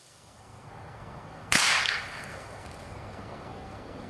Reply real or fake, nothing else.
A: fake